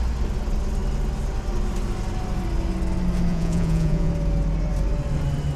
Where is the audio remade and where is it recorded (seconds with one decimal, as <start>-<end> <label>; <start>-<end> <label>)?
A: 0.0-3.3 recorded; 3.3-4.1 remade; 4.1-5.6 recorded